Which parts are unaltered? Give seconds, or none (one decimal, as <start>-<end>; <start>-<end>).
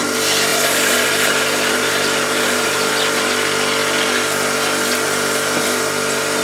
0.0-0.5; 2.9-6.4